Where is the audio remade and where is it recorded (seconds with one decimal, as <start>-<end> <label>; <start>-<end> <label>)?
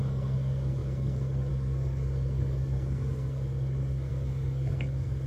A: 0.0-5.3 remade